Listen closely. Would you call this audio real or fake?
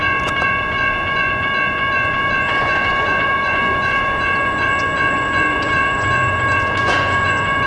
fake